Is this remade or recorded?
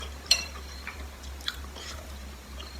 remade